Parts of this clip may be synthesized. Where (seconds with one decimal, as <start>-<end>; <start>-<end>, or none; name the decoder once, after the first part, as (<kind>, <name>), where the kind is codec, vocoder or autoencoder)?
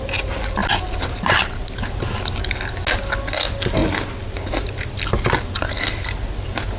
none